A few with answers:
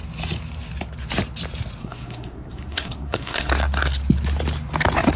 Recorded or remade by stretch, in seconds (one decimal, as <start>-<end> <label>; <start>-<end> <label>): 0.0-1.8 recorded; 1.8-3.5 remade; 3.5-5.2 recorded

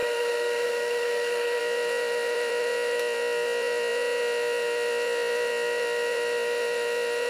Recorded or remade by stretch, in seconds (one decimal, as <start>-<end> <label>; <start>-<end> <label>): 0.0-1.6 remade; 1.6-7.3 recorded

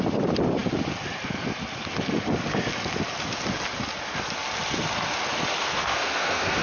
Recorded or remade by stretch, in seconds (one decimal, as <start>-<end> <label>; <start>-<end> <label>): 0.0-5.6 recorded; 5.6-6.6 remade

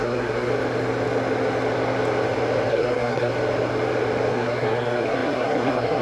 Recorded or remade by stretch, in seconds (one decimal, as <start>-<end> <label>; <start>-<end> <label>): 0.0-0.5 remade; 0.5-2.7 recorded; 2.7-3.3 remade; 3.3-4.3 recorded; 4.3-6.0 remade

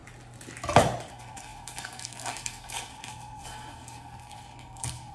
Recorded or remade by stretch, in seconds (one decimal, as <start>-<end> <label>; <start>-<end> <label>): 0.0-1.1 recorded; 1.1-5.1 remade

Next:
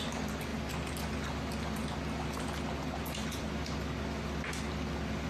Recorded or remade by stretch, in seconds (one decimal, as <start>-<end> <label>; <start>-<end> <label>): 0.0-5.3 recorded